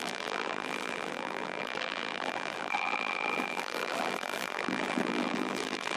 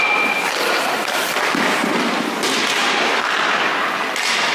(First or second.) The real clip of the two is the second